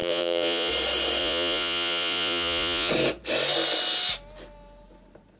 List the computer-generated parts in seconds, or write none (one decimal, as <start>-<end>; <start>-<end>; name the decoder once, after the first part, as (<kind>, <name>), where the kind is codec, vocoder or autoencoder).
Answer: 0.0-0.7 (vocoder, Vocos); 1.2-2.9